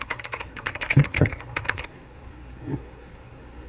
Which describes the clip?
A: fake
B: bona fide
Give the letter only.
A